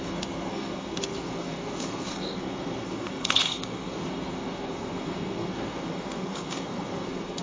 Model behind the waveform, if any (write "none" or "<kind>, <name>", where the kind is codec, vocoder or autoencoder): codec, SNAC